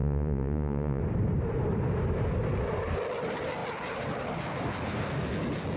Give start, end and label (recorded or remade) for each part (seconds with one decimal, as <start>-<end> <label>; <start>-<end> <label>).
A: 0.0-1.0 remade; 1.0-5.8 recorded